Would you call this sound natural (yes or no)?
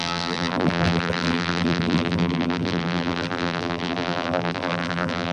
no